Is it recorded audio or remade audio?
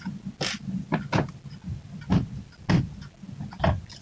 recorded